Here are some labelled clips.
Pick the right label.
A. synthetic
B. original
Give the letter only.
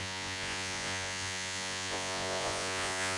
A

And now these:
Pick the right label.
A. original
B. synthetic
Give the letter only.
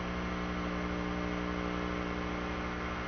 A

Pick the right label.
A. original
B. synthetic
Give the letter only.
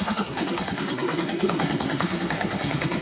B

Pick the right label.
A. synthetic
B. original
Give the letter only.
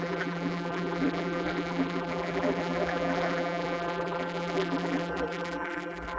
A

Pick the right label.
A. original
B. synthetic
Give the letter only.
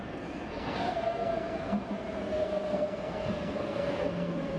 B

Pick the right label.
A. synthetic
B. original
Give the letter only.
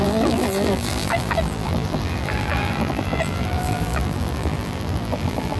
A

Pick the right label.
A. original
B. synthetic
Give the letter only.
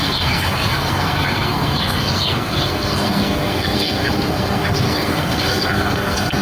B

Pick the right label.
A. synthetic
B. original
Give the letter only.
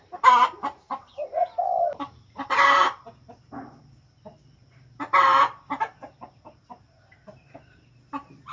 A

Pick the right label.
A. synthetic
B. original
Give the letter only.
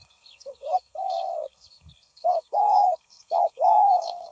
A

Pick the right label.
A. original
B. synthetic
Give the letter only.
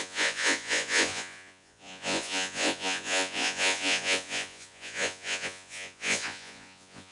B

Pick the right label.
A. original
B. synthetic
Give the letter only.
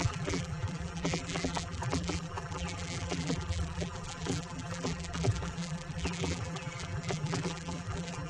B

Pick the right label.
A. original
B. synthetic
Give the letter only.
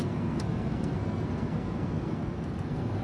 B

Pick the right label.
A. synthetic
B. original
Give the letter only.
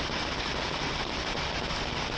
B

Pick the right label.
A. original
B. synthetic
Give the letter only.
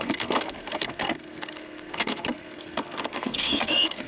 B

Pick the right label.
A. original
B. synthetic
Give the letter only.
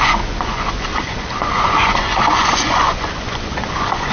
B